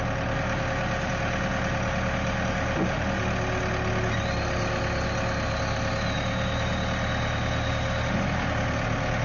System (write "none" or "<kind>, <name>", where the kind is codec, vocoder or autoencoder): none